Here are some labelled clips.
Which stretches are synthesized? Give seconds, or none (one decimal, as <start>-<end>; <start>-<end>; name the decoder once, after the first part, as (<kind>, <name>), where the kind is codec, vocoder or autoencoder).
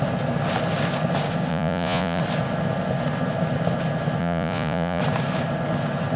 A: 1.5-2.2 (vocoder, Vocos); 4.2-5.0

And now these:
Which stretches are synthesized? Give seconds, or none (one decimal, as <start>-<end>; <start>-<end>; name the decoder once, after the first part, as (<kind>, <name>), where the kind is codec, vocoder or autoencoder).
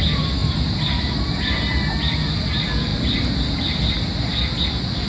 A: none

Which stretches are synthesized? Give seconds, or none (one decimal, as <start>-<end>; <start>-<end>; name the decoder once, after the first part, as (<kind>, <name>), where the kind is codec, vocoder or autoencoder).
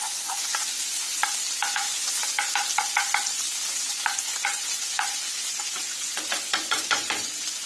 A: 0.0-1.2 (vocoder, Vocos); 1.7-2.2; 3.7-7.7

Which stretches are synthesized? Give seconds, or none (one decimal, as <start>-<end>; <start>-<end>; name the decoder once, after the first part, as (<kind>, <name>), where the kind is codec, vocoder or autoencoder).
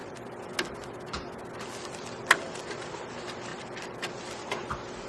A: none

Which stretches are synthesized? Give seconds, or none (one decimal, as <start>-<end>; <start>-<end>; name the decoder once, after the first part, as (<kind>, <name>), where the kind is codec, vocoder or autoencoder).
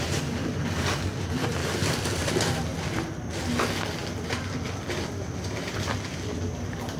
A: none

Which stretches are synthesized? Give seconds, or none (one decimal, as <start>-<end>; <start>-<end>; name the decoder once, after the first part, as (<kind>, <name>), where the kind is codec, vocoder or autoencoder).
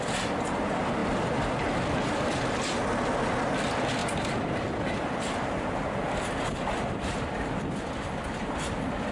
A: none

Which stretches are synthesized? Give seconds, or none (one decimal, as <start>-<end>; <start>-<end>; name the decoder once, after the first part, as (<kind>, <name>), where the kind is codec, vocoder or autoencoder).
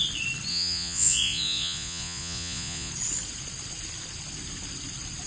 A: 0.5-2.9 (vocoder, Vocos)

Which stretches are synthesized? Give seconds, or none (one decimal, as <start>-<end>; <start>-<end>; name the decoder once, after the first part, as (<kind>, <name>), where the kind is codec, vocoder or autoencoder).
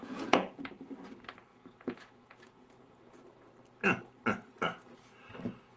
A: 0.0-0.6 (vocoder, Vocos); 1.5-3.5